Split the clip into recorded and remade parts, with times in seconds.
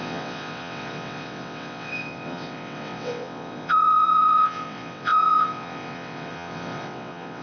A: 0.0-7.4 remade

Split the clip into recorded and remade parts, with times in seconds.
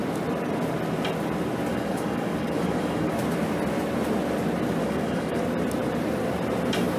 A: 0.0-1.7 recorded; 1.7-3.1 remade; 3.1-4.8 recorded; 4.8-5.4 remade; 5.4-7.0 recorded